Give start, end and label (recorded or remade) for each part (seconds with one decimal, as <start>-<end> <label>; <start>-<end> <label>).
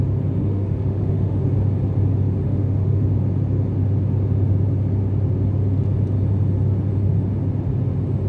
0.0-0.4 recorded; 0.4-1.4 remade; 1.4-2.4 recorded; 2.4-3.0 remade; 3.0-8.3 recorded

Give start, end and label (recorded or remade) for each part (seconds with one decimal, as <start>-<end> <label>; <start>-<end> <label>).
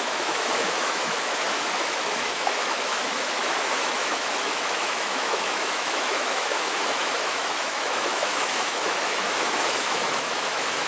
0.0-10.9 remade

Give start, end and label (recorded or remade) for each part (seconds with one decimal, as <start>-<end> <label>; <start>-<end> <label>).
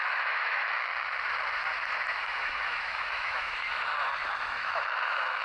0.0-0.9 remade; 0.9-2.2 recorded; 2.2-3.9 remade; 3.9-4.4 recorded; 4.4-5.4 remade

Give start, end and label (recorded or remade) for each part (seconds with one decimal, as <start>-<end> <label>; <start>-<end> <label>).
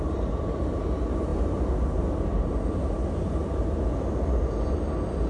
0.0-5.3 recorded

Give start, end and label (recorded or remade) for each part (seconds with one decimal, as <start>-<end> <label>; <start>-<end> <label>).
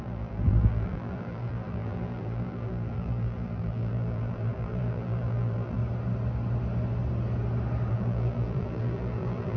0.0-5.8 remade; 5.8-7.9 recorded; 7.9-9.6 remade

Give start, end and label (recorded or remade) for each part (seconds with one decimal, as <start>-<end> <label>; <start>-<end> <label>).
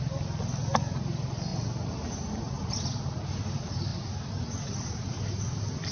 0.0-5.9 recorded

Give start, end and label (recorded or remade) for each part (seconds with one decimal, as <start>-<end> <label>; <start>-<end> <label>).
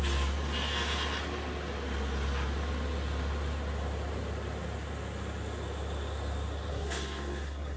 0.0-6.7 recorded; 6.7-7.8 remade